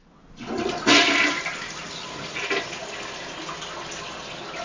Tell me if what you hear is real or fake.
real